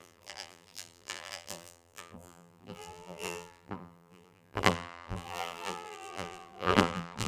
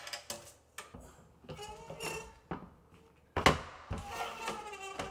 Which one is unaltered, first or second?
second